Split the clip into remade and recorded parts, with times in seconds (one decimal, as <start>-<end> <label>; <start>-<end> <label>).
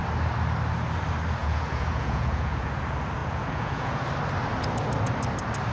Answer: 0.0-1.4 recorded; 1.4-2.8 remade; 2.8-3.2 recorded; 3.2-4.0 remade; 4.0-5.7 recorded